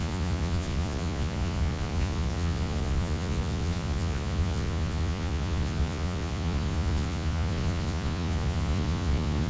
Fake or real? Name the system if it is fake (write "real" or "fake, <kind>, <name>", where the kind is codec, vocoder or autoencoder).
fake, vocoder, Vocos